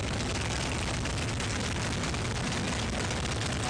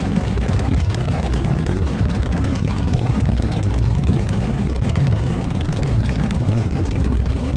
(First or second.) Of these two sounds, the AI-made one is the second